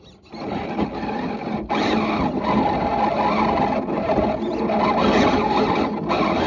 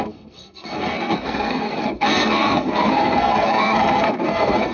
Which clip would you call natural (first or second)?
first